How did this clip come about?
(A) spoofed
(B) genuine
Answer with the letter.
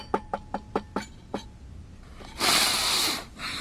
B